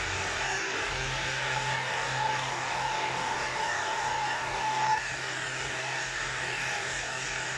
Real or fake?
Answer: fake